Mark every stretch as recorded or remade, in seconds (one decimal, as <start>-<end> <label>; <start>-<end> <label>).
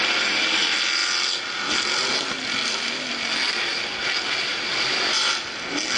0.0-4.5 recorded; 4.5-5.3 remade; 5.3-6.0 recorded